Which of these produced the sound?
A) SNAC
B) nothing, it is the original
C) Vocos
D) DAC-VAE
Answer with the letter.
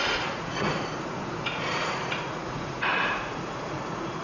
C